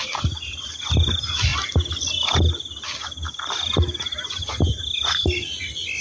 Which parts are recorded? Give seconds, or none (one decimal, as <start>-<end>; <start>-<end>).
0.0-6.0